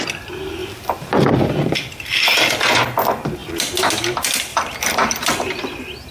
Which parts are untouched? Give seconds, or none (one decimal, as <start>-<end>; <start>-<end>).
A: 0.0-0.6; 1.2-4.5; 5.1-6.1